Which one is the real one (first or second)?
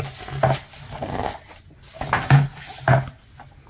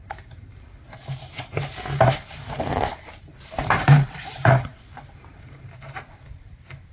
first